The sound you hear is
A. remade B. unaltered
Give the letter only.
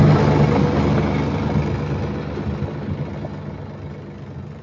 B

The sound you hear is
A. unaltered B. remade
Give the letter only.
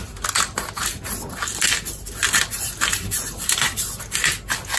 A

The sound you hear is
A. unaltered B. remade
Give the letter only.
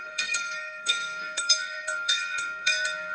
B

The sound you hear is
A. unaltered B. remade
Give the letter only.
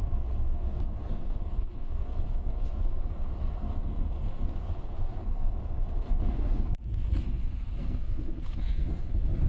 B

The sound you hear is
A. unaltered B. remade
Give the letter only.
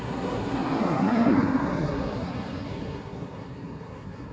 B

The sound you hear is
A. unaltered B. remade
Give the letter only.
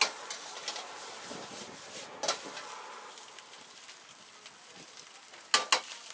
A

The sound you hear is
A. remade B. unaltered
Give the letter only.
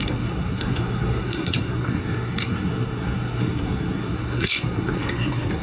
A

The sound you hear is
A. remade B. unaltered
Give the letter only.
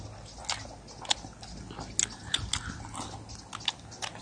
B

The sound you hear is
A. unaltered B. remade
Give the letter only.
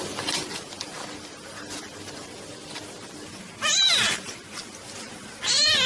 A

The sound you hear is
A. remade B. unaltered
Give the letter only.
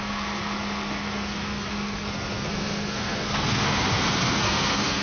A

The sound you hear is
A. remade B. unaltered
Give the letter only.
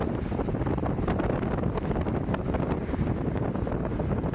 B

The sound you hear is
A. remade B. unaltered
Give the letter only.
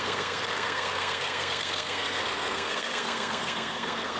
A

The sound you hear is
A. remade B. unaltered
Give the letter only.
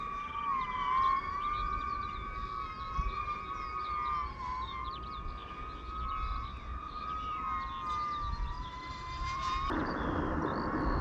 B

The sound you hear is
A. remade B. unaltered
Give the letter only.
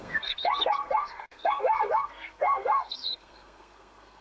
A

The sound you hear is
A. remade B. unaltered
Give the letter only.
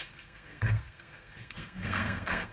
A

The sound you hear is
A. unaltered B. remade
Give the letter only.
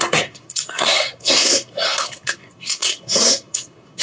B